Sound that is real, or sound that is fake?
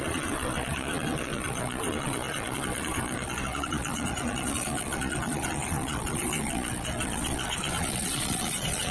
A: fake